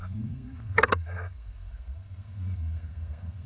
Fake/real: fake